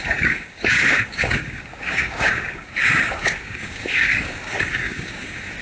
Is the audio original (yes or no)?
no